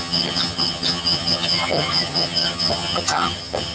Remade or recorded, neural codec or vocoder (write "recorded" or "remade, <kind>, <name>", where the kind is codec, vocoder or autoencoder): remade, vocoder, HiFi-GAN